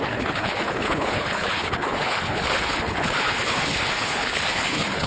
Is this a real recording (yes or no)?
no